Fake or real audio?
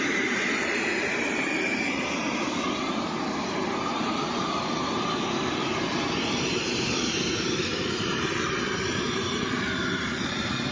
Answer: fake